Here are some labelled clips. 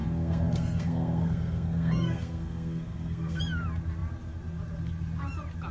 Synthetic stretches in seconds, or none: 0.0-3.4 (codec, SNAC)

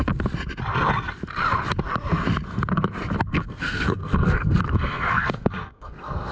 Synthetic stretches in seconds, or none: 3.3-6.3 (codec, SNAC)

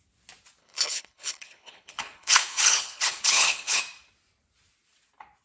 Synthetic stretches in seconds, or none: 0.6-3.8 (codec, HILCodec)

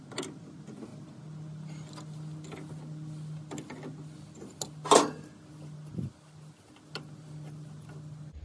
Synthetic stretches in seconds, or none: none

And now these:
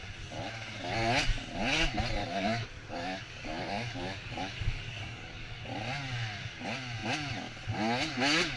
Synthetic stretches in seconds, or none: 2.2-5.6 (codec, DAC)

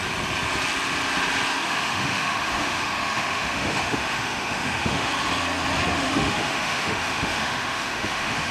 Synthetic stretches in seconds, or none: 1.6-5.1 (autoencoder, DAC-VAE); 5.9-8.5

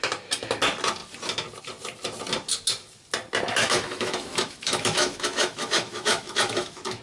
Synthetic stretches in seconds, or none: 3.6-7.0 (autoencoder, DAC-VAE)